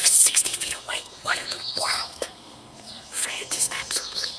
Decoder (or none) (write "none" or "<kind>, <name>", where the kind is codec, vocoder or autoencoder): codec, SNAC